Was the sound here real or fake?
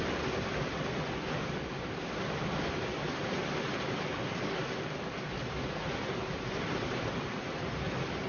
real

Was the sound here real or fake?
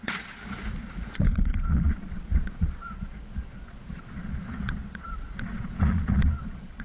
fake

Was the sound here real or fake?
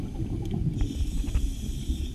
real